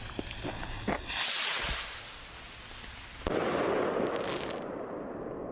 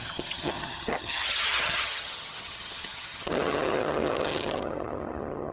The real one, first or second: first